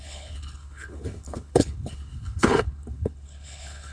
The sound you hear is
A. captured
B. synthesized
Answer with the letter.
B